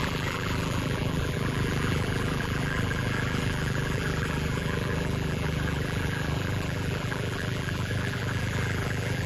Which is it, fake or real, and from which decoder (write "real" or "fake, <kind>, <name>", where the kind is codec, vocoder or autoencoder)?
fake, vocoder, BigVGAN v2